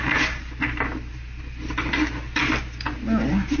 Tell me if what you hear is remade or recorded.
recorded